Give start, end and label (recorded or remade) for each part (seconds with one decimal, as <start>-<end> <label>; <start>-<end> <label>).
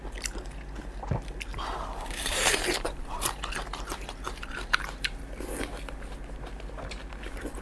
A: 0.0-1.5 recorded; 1.5-5.2 remade; 5.2-7.6 recorded